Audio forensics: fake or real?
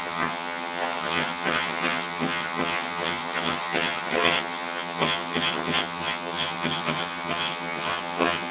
fake